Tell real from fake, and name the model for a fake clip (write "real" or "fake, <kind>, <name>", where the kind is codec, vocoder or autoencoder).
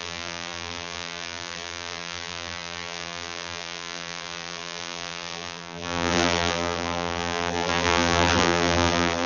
fake, vocoder, BigVGAN v2